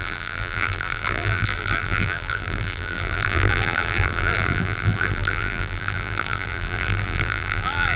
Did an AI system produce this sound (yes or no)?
yes